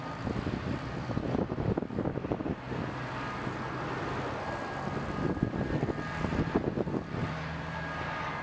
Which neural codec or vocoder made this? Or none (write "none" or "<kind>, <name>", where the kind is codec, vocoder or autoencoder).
none